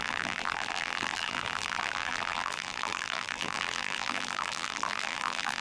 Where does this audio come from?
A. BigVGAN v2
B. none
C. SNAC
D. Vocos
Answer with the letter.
A